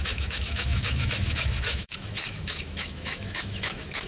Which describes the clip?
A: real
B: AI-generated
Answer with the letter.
B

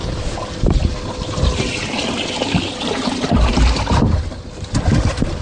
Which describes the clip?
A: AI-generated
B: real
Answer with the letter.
B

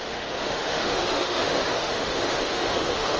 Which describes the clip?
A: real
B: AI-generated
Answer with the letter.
B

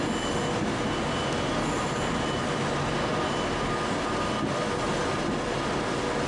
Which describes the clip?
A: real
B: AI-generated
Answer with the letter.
A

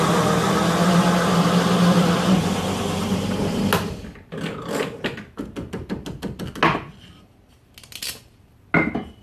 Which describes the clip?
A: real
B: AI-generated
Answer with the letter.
A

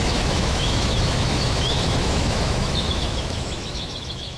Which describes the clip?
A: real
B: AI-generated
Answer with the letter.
B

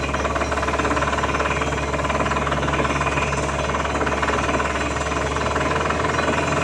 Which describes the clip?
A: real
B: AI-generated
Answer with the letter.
A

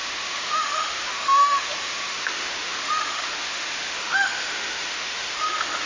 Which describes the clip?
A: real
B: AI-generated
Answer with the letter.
B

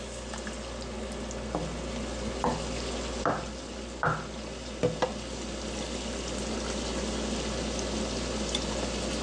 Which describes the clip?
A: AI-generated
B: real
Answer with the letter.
B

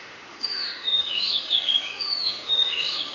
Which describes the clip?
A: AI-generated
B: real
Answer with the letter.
A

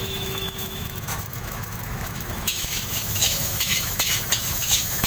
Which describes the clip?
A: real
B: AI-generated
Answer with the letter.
B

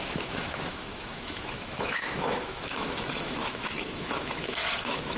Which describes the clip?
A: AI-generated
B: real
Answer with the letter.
A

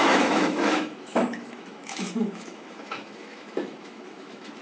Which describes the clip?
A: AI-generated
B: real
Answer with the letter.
A